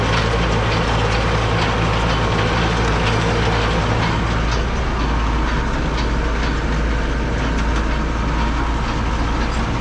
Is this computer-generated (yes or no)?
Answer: no